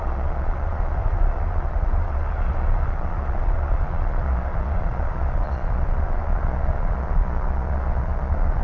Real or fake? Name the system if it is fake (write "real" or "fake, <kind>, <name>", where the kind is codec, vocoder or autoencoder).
fake, vocoder, Vocos